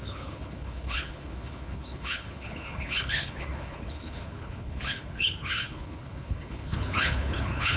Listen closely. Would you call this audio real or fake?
fake